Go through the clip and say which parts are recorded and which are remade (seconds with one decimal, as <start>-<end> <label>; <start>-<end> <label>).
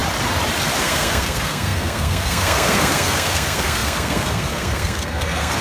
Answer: 0.0-0.8 recorded; 0.8-5.6 remade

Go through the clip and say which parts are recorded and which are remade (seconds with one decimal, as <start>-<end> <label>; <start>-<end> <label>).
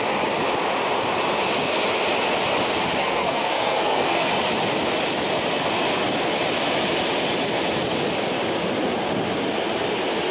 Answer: 0.0-3.0 recorded; 3.0-4.3 remade; 4.3-10.3 recorded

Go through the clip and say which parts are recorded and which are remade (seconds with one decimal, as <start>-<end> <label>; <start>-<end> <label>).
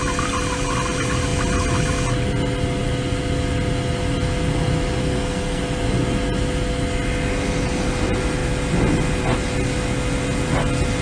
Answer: 0.0-5.0 recorded; 5.0-5.6 remade; 5.6-11.0 recorded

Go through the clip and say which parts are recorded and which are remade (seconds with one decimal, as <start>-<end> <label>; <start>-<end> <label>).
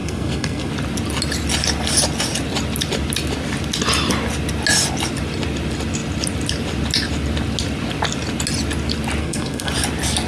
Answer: 0.0-0.7 remade; 0.7-9.2 recorded; 9.2-9.7 remade; 9.7-10.3 recorded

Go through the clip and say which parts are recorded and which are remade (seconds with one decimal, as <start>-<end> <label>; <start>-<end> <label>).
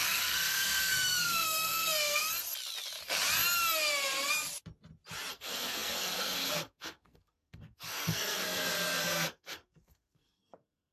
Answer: 0.0-2.3 remade; 2.3-5.3 recorded; 5.3-10.9 remade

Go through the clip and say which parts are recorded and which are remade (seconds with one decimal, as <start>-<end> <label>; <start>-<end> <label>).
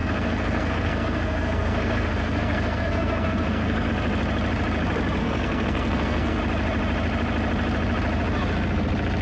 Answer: 0.0-3.9 remade; 3.9-5.2 recorded; 5.2-6.4 remade; 6.4-9.2 recorded